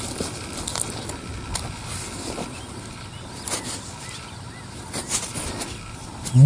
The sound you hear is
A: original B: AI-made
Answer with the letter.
A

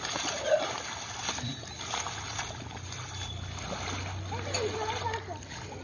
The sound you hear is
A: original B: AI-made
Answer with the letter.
A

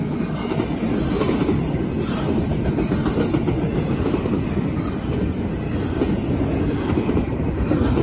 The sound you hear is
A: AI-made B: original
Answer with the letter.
B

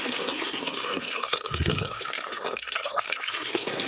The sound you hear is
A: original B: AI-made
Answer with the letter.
B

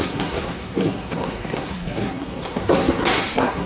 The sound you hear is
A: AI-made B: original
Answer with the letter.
A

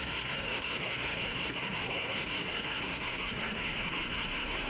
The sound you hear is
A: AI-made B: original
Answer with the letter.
A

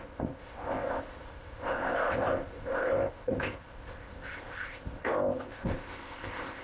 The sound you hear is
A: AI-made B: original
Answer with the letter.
A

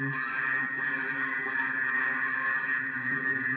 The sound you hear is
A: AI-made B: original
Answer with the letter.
B